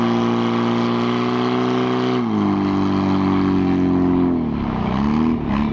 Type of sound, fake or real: real